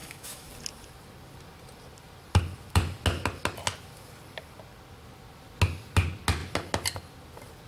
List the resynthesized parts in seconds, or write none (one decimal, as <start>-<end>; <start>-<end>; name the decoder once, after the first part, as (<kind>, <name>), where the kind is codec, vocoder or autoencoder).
0.0-0.5 (autoencoder, DAC-VAE)